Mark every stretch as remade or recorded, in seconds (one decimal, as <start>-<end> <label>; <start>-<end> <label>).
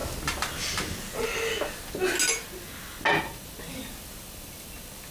0.0-5.1 recorded